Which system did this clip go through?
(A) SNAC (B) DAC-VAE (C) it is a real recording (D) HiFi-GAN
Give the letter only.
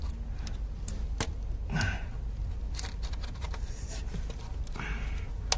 C